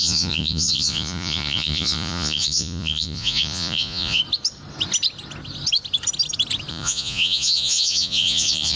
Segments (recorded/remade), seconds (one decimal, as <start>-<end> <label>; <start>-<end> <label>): 0.0-4.2 remade; 4.2-6.7 recorded; 6.7-8.8 remade